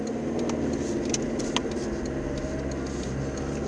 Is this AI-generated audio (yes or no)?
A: no